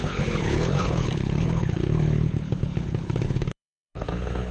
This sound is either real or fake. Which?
fake